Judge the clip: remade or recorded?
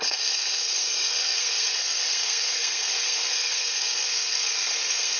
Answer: remade